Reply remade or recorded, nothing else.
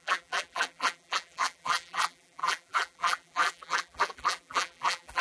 remade